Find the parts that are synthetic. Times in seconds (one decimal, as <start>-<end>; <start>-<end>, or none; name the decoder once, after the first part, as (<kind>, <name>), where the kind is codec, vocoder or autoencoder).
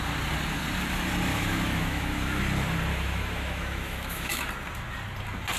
1.3-2.4 (autoencoder, DAC-VAE); 2.9-4.5